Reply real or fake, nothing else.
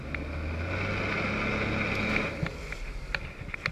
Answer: real